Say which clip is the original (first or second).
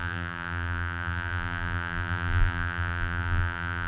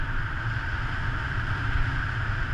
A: second